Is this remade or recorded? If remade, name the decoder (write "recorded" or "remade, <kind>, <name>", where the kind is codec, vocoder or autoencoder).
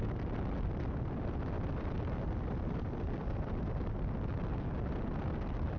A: recorded